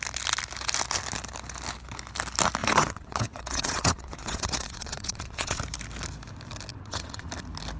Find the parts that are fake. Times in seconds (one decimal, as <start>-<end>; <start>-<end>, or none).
2.6-5.6; 6.7-7.3